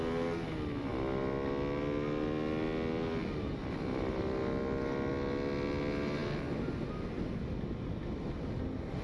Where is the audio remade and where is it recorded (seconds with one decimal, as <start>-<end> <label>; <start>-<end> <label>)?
0.0-9.0 recorded